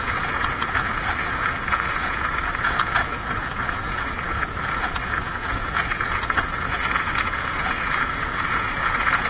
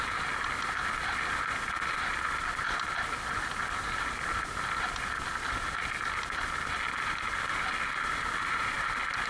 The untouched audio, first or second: second